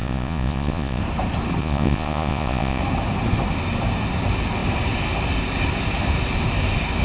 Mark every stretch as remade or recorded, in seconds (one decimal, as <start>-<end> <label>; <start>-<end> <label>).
0.0-1.0 remade; 1.0-1.6 recorded; 1.6-2.8 remade; 2.8-7.0 recorded